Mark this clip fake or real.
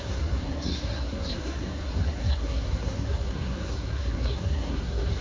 fake